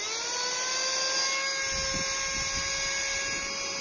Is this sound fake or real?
real